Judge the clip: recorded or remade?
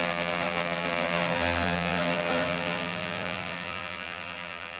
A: remade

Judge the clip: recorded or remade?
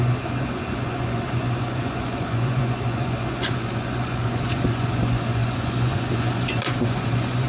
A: remade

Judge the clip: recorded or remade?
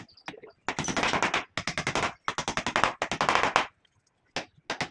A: recorded